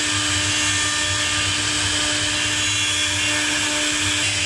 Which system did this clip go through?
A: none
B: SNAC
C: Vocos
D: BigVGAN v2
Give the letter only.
A